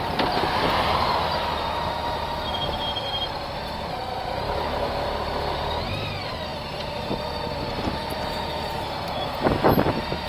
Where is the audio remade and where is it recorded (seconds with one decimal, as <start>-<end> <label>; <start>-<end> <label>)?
0.0-6.5 recorded; 6.5-7.0 remade; 7.0-10.3 recorded